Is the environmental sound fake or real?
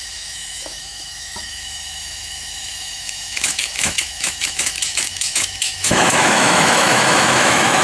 fake